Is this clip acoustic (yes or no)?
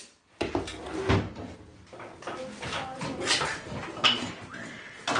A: yes